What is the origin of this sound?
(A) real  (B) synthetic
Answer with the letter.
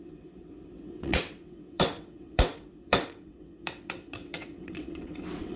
B